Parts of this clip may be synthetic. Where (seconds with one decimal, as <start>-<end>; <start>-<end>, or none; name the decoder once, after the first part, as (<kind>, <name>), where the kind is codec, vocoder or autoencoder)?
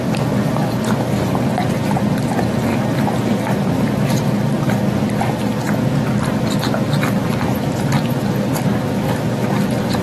none